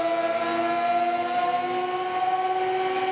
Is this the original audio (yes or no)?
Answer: yes